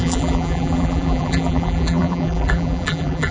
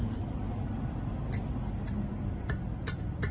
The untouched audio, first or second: second